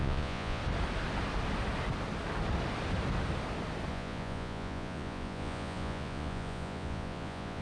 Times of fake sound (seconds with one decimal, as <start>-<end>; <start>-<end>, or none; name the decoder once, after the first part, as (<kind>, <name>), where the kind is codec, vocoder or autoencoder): 0.0-0.6 (vocoder, Vocos); 3.9-7.6